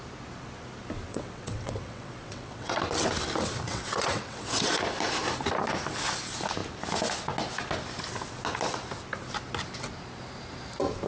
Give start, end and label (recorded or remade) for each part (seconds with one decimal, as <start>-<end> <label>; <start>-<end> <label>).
0.0-1.1 recorded; 1.1-2.8 remade; 2.8-3.7 recorded; 3.7-4.7 remade; 4.7-11.1 recorded